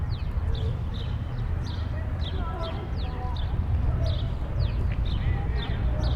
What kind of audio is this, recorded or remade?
recorded